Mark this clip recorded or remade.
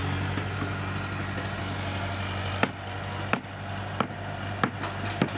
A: recorded